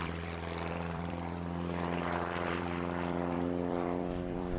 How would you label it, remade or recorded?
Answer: remade